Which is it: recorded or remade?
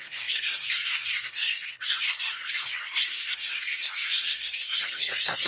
remade